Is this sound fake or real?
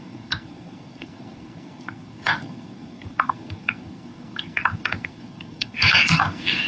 fake